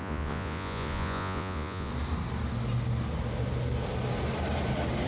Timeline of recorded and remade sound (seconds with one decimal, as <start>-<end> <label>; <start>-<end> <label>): 0.0-1.9 remade; 1.9-5.1 recorded